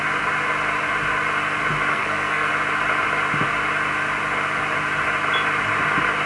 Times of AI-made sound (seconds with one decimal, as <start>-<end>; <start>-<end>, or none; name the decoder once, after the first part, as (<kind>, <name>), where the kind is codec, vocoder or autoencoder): 1.9-2.5 (codec, SNAC)